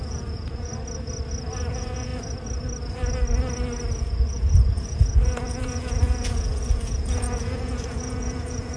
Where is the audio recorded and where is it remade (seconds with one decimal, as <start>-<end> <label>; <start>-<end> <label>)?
0.0-0.7 remade; 0.7-1.7 recorded; 1.7-2.1 remade; 2.1-3.9 recorded; 3.9-8.8 remade